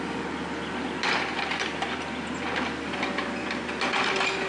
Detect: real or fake real